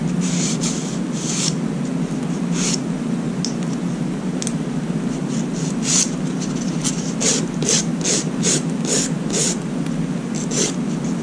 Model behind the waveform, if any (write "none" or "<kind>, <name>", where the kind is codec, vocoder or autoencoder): none